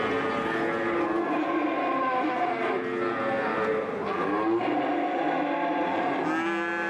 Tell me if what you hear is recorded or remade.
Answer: recorded